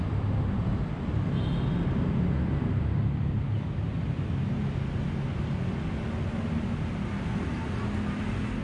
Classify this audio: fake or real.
real